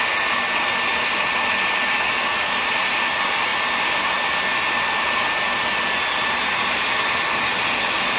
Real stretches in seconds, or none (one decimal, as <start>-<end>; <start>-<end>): 0.0-8.2